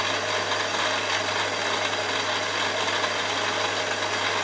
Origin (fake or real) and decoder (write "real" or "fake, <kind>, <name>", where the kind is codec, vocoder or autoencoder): real